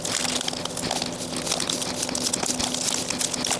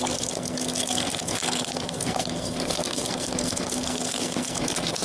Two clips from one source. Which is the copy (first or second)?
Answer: second